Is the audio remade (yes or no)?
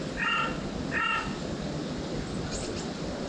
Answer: no